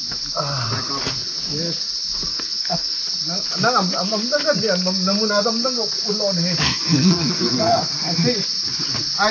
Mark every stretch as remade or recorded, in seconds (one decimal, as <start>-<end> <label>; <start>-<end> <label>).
0.0-2.3 recorded; 2.3-3.0 remade; 3.0-6.6 recorded; 6.6-7.8 remade; 7.8-9.3 recorded